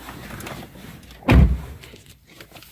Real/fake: real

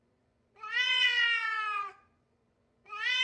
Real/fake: fake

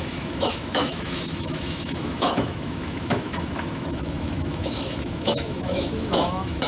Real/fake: fake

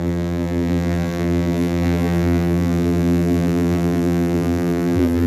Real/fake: fake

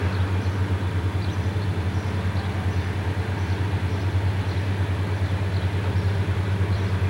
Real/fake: real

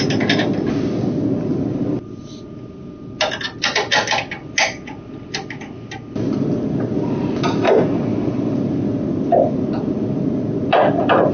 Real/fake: real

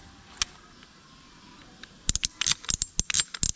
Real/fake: real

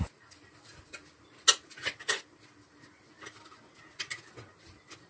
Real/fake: real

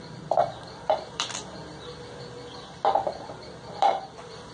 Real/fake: fake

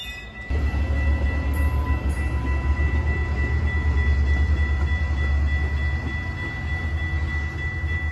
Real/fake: real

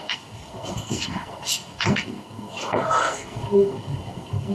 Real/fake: fake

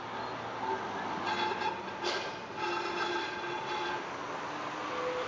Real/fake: real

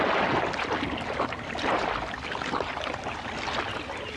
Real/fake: real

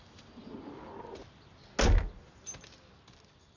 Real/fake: real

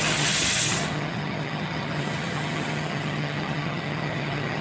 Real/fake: fake